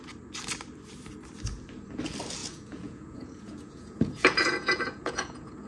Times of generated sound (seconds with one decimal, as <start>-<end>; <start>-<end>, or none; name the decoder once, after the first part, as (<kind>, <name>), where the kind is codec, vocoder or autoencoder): 2.4-5.7 (vocoder, Vocos)